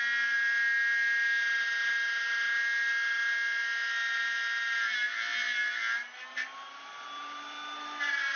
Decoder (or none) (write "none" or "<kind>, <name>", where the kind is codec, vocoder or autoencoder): none